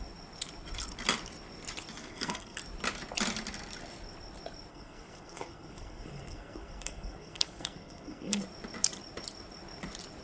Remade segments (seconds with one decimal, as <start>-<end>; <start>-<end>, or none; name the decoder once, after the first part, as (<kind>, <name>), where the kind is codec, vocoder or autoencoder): 2.0-2.6 (codec, SNAC); 4.7-8.4

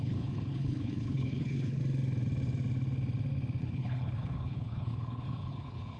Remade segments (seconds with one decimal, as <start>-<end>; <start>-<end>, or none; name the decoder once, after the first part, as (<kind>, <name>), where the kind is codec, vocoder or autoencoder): 0.0-1.8 (codec, HILCodec); 3.6-6.0

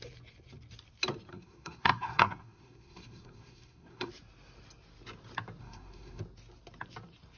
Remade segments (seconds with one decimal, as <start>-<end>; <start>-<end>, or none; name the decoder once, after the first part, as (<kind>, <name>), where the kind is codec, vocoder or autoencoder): 1.3-4.1 (codec, SNAC); 5.6-6.2

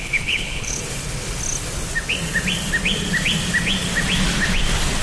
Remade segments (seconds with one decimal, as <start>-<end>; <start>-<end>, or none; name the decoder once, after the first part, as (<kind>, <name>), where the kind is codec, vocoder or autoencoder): 0.0-0.8 (codec, HILCodec)

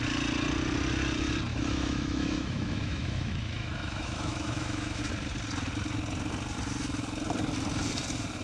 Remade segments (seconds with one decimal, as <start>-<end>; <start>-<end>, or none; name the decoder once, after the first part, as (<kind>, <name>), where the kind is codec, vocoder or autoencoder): 1.5-5.0 (autoencoder, DAC-VAE)

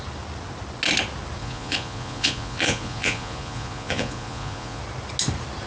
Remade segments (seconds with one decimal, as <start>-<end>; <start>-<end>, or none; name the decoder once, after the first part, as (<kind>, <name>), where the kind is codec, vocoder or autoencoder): 1.4-4.8 (vocoder, Vocos)

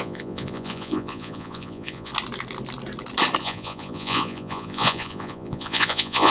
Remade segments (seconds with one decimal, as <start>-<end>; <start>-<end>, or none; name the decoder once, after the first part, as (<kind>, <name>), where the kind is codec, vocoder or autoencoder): 0.0-2.1 (vocoder, Vocos); 3.4-6.3

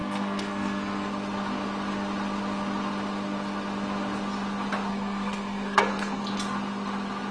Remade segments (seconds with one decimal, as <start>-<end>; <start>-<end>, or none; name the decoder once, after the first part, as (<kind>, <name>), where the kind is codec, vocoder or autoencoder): 0.0-1.1 (codec, SNAC); 4.9-6.2